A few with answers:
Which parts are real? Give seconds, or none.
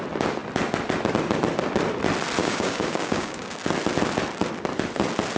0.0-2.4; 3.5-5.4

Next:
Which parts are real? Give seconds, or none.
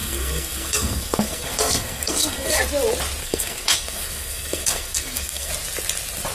2.6-3.2; 5.5-6.3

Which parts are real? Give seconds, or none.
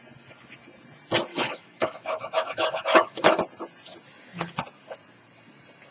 0.0-1.3; 3.4-5.9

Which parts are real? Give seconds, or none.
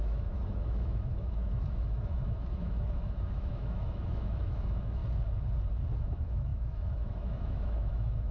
5.0-6.0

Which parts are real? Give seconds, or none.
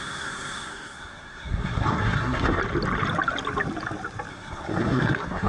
2.6-4.3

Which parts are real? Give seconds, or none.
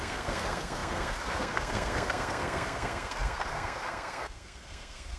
none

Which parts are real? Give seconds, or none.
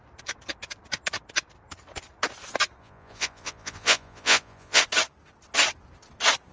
0.0-2.8; 4.8-6.5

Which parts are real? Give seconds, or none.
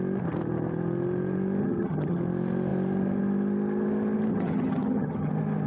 0.0-1.6; 2.2-4.3; 5.3-5.7